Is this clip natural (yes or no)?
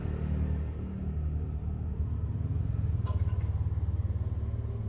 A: yes